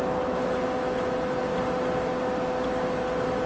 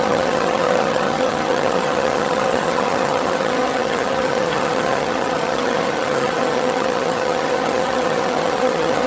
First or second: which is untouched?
first